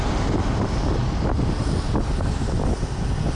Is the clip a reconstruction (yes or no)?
no